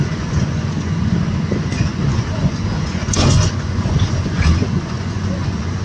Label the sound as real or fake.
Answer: fake